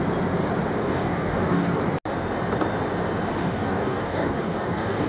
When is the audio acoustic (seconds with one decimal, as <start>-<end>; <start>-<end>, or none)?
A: 0.0-0.8; 1.8-3.4